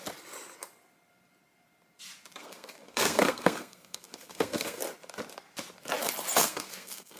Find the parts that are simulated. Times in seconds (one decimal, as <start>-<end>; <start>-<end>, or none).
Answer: 2.4-4.8; 6.4-7.2